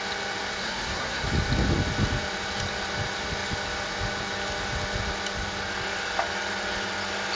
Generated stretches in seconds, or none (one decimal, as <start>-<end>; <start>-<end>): 0.6-1.3